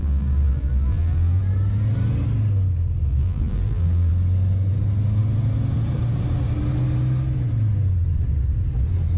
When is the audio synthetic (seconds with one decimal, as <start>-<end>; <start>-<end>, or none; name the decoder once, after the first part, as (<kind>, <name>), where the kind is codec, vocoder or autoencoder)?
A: 0.0-1.4 (vocoder, BigVGAN v2); 3.1-4.1